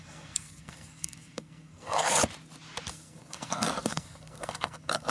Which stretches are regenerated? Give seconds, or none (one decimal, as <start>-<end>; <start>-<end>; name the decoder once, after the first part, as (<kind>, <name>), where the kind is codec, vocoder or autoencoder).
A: 0.0-2.2 (codec, SNAC); 2.9-5.1